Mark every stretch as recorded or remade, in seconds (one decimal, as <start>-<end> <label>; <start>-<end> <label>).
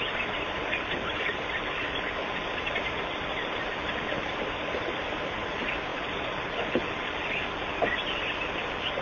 0.0-9.0 recorded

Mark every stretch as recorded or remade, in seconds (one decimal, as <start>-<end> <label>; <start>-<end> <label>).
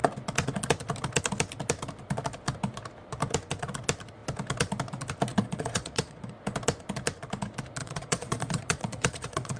0.0-5.3 recorded; 5.3-6.3 remade; 6.3-7.8 recorded; 7.8-9.6 remade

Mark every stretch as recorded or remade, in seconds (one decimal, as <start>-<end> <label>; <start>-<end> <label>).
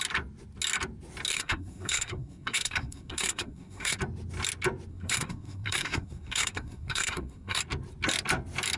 0.0-1.3 recorded; 1.3-4.0 remade; 4.0-4.9 recorded; 4.9-7.6 remade; 7.6-8.8 recorded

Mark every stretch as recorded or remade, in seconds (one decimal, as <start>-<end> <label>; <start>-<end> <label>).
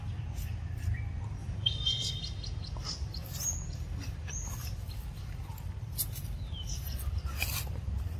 0.0-1.4 recorded; 1.4-1.9 remade; 1.9-8.2 recorded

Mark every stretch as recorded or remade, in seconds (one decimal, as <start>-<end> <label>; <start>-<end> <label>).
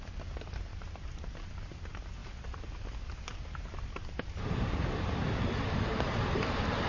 0.0-0.7 recorded; 0.7-1.7 remade; 1.7-3.3 recorded; 3.3-6.9 remade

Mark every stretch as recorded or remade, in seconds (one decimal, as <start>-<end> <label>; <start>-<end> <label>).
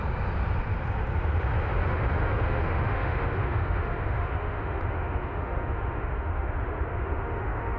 0.0-1.8 recorded; 1.8-6.5 remade; 6.5-6.9 recorded; 6.9-7.8 remade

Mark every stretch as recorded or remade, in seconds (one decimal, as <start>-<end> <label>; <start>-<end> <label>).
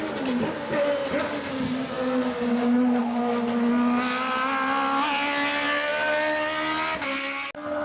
0.0-7.8 recorded